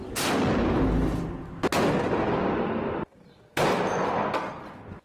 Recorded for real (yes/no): yes